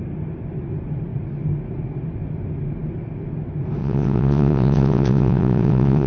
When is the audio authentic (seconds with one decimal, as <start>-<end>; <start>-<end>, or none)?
0.0-3.8